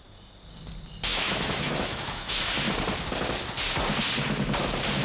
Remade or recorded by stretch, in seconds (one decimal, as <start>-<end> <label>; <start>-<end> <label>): 0.0-1.1 recorded; 1.1-2.5 remade; 2.5-5.0 recorded

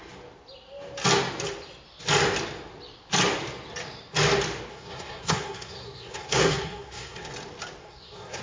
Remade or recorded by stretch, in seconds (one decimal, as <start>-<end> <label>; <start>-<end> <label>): 0.0-4.7 recorded; 4.7-7.3 remade; 7.3-7.8 recorded; 7.8-8.4 remade

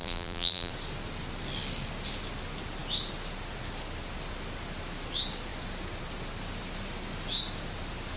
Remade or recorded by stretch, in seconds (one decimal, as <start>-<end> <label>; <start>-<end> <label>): 0.0-0.7 remade; 0.7-8.2 recorded

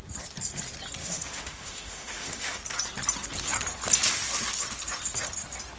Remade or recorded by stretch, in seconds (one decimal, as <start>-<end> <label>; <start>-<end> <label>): 0.0-1.0 recorded; 1.0-2.6 remade; 2.6-5.8 recorded

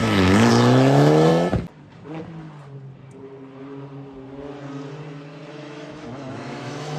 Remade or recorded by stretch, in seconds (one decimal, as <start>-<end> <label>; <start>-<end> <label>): 0.0-1.3 remade; 1.3-5.5 recorded; 5.5-7.0 remade

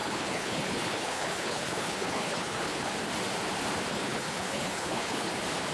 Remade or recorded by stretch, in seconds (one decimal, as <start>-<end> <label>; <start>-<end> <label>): 0.0-2.9 remade; 2.9-3.9 recorded; 3.9-5.3 remade; 5.3-5.7 recorded

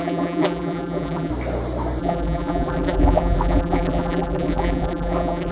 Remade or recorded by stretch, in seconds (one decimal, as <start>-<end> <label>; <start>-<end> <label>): 0.0-1.3 remade; 1.3-2.0 recorded; 2.0-5.5 remade

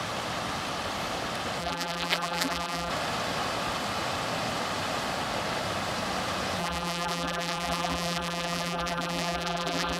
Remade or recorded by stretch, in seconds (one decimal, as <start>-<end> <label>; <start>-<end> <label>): 0.0-1.6 recorded; 1.6-2.9 remade; 2.9-6.6 recorded; 6.6-10.0 remade